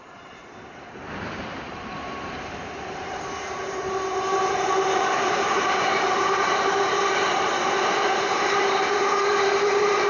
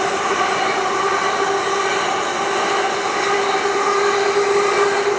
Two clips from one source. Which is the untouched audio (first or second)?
second